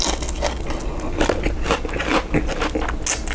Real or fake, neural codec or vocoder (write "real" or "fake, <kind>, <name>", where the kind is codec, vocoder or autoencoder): real